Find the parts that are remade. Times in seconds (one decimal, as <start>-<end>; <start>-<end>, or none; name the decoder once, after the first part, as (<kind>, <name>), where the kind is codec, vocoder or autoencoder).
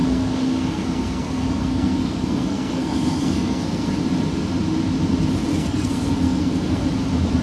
0.0-3.9 (codec, SNAC); 5.5-6.8